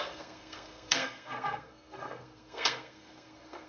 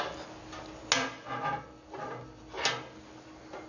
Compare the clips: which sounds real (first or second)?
second